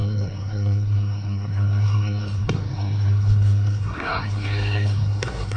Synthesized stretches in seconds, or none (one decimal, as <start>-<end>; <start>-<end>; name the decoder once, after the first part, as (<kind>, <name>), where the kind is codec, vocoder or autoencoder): 0.0-5.6 (codec, SNAC)